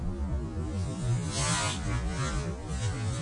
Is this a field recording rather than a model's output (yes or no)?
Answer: yes